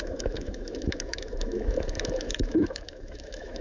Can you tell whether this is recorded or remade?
remade